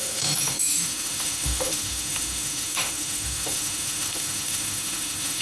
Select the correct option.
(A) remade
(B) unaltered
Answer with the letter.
A